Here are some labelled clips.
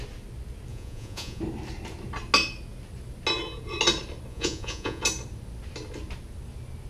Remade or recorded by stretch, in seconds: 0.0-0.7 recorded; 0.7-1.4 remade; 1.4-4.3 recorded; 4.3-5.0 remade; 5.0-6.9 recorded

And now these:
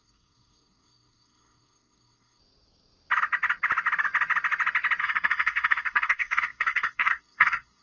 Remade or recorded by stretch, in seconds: 0.0-2.4 remade; 2.4-5.0 recorded; 5.0-7.8 remade

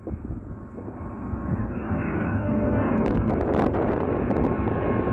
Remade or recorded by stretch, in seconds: 0.0-1.6 recorded; 1.6-3.3 remade; 3.3-5.1 recorded